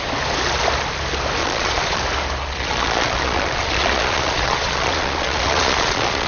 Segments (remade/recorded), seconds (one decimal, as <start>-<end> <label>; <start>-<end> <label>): 0.0-1.4 recorded; 1.4-2.0 remade; 2.0-2.4 recorded; 2.4-6.3 remade